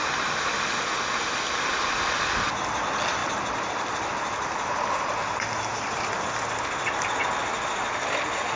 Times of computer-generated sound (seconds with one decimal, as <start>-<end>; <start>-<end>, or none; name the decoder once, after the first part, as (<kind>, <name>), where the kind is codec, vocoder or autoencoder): 3.2-4.1 (vocoder, BigVGAN v2); 5.7-6.3